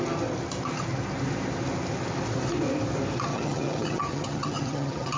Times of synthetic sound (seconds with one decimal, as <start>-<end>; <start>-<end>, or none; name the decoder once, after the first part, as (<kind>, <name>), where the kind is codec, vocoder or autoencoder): 3.3-5.2 (vocoder, HiFi-GAN)